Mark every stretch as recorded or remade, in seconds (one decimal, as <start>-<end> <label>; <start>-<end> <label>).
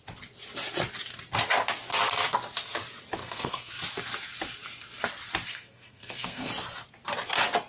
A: 0.0-3.2 recorded; 3.2-3.7 remade; 3.7-5.5 recorded; 5.5-6.5 remade; 6.5-7.7 recorded